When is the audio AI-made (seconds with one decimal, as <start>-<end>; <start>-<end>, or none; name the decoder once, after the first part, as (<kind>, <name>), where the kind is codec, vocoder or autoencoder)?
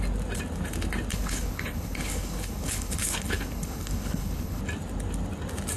1.1-4.6 (codec, HILCodec)